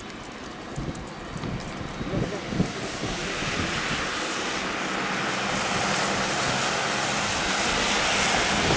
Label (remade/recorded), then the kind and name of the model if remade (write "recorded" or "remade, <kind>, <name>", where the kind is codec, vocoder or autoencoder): recorded